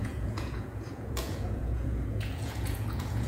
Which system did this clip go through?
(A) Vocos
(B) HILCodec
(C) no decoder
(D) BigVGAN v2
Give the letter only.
A